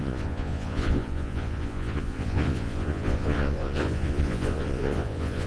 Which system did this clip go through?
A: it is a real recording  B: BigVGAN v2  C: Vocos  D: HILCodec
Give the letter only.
C